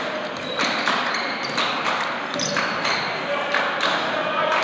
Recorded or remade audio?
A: recorded